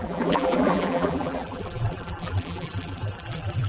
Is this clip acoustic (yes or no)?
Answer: no